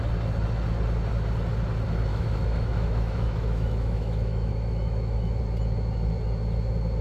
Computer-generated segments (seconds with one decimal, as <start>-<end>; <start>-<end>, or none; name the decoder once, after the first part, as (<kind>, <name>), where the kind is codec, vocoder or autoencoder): 2.1-5.4 (autoencoder, DAC-VAE)